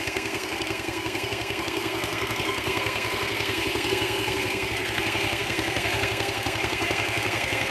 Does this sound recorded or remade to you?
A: remade